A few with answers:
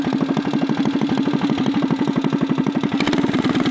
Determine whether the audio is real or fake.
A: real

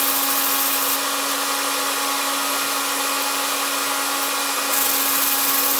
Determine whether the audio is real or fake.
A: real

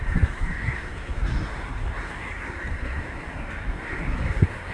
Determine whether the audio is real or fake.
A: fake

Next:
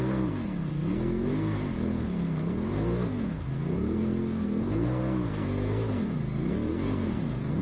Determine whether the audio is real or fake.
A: fake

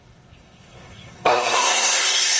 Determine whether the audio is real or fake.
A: fake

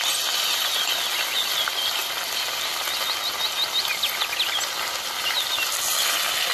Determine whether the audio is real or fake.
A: real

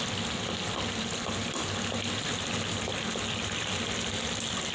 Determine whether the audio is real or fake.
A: real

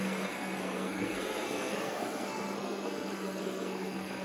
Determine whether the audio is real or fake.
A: fake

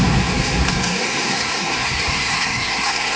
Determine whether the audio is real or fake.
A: fake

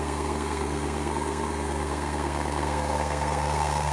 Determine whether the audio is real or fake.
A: fake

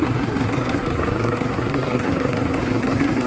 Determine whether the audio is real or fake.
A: fake